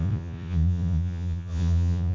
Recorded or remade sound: remade